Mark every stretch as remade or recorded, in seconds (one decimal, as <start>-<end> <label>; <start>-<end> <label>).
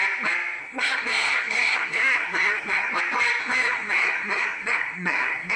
0.0-0.6 recorded; 0.6-2.9 remade; 2.9-3.4 recorded; 3.4-5.6 remade